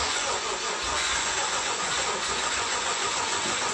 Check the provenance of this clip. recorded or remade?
remade